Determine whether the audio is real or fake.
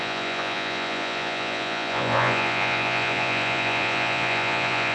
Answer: fake